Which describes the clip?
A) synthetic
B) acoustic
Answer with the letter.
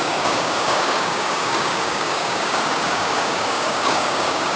A